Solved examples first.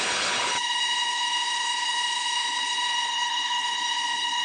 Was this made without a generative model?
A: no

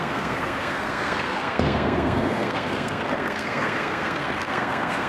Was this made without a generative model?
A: no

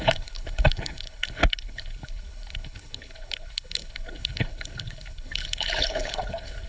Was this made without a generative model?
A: no